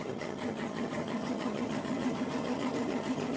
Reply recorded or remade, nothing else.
remade